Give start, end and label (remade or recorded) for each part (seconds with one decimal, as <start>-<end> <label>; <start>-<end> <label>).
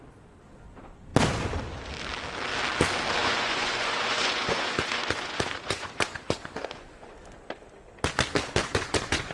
0.0-3.2 recorded; 3.2-7.4 remade; 7.4-8.6 recorded; 8.6-9.3 remade